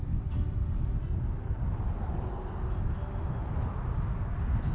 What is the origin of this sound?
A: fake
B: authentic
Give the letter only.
B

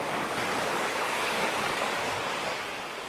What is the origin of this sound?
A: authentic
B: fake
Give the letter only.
B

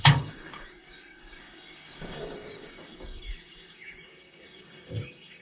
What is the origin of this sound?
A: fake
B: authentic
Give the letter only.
A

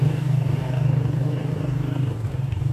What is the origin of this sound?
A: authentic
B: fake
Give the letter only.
B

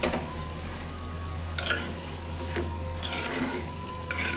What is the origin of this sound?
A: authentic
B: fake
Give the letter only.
B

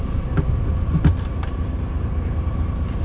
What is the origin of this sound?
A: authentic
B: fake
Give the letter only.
A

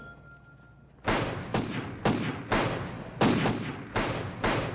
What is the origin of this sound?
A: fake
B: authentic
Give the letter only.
B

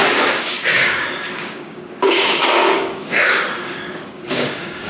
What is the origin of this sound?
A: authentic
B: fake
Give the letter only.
B